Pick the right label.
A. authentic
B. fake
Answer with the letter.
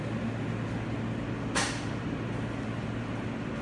A